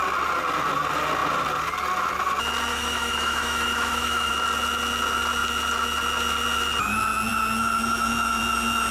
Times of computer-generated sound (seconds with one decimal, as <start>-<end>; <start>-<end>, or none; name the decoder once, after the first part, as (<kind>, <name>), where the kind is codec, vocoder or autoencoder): 2.7-4.3 (autoencoder, DAC-VAE)